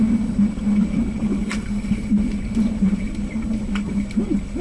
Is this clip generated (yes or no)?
no